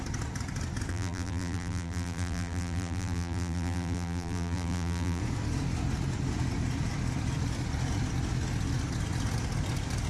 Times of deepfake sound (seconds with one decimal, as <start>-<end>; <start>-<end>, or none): 0.9-5.2